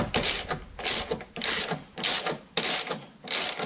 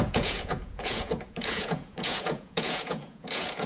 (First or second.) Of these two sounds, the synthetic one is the second